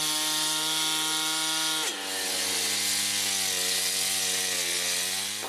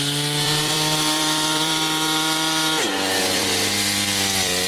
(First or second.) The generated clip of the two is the second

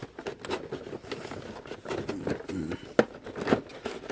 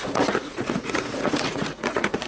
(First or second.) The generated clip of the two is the second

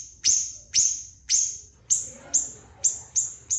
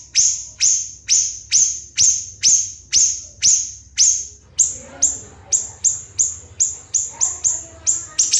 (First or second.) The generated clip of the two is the first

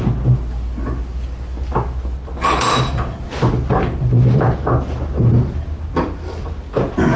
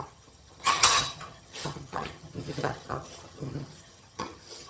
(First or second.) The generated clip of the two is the second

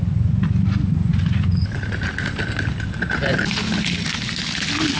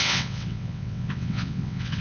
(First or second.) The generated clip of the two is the second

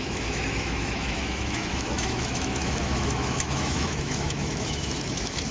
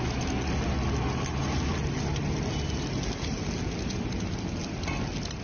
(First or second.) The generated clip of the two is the first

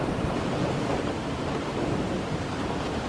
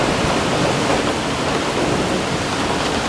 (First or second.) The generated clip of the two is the first